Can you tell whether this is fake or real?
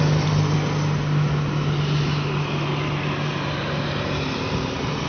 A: real